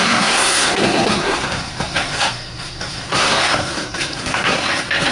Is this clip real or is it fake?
fake